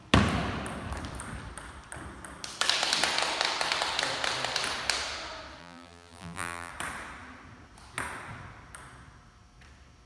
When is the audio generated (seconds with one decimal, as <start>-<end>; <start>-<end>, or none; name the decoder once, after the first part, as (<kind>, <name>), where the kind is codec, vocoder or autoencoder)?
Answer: 5.6-6.7 (vocoder, BigVGAN v2)